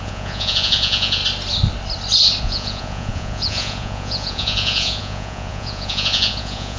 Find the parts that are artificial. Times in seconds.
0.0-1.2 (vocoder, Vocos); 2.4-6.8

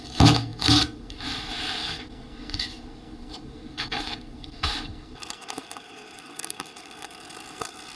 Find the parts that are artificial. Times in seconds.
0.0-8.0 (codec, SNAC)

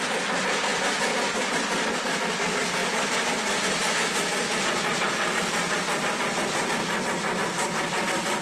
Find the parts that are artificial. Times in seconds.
0.7-2.1 (vocoder, BigVGAN v2)

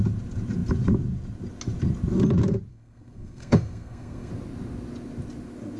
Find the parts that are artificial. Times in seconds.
2.7-4.3 (codec, SNAC)

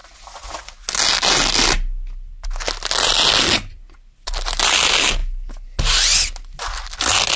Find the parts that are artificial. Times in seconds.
none

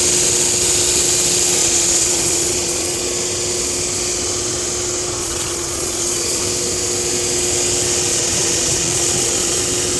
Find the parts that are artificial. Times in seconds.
1.6-3.0 (vocoder, Vocos); 5.2-6.4; 8.1-9.6

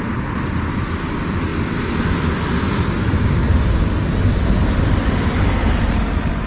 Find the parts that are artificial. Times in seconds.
none